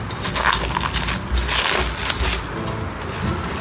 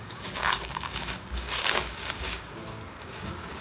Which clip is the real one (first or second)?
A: first